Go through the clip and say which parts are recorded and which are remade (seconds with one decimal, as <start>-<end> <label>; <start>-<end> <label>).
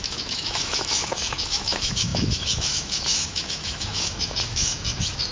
0.0-5.3 remade